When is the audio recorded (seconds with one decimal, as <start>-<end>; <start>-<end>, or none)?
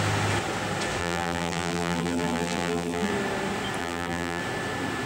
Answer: 0.0-1.0; 3.1-3.8; 4.4-5.1